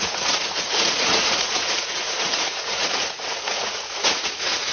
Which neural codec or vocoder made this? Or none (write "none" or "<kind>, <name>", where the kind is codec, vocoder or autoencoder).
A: vocoder, Vocos